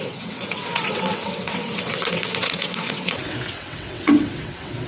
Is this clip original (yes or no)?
no